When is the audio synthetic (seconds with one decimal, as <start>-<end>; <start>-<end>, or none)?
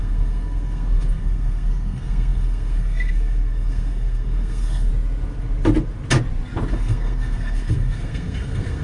0.0-4.9; 6.7-8.8